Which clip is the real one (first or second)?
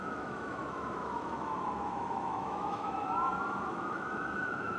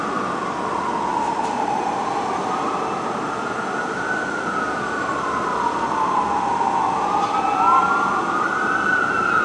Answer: second